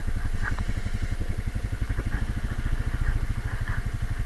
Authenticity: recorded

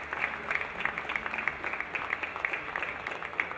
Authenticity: recorded